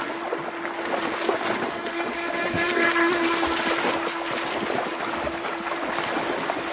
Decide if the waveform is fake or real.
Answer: real